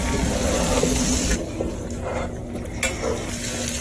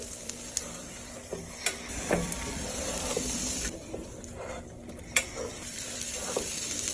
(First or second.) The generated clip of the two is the second